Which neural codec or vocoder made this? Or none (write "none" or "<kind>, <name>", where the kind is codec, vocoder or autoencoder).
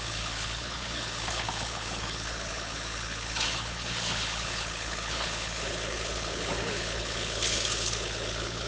codec, HILCodec